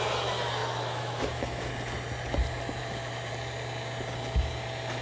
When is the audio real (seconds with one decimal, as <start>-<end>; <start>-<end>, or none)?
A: 0.0-0.6; 1.7-2.8; 3.3-5.0